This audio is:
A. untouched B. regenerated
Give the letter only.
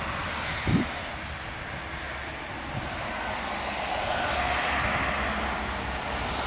A